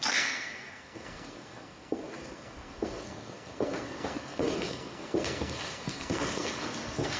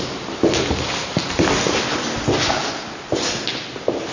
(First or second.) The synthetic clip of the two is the first